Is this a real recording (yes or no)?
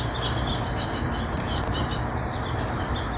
yes